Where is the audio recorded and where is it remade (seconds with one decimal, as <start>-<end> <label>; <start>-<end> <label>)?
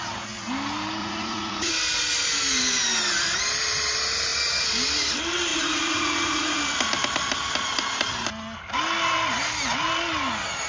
0.0-1.0 recorded; 1.0-1.7 remade; 1.7-5.5 recorded; 5.5-6.6 remade; 6.6-10.7 recorded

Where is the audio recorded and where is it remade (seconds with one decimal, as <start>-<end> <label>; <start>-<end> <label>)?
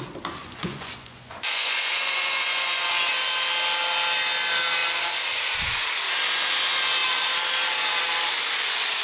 0.0-0.4 recorded; 0.4-2.9 remade; 2.9-9.0 recorded